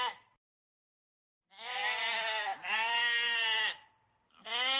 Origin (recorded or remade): recorded